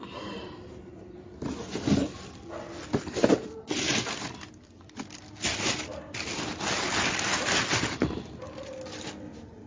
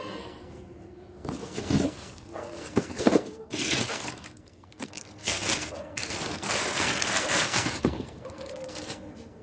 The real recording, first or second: first